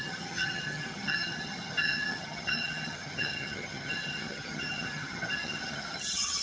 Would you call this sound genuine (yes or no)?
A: no